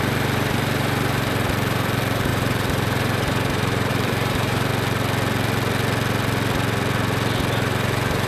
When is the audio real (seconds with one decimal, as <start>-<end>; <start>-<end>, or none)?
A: 4.7-7.6